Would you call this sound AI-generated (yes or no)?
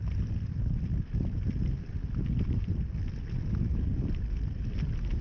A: no